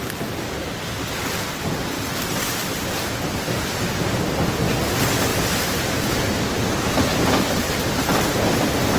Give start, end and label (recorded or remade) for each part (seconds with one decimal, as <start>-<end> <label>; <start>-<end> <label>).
0.0-0.6 recorded; 0.6-4.6 remade; 4.6-9.0 recorded